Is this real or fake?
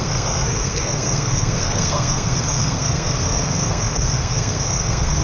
fake